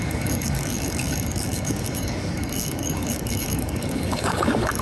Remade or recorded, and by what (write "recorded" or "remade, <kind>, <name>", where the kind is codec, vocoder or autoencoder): remade, codec, DAC